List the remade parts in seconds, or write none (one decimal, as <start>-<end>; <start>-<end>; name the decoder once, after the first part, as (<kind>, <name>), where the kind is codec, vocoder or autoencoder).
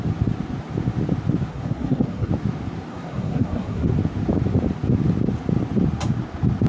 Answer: 1.5-2.3 (codec, SNAC); 2.9-3.9